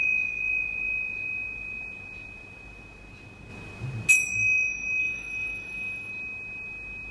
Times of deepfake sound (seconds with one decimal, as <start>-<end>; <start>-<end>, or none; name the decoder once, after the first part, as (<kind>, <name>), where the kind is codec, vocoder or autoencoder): 5.0-6.1 (codec, DAC)